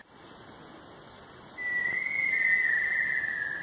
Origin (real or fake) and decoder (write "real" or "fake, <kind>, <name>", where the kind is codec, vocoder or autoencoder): real